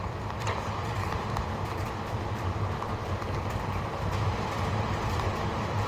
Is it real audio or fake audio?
fake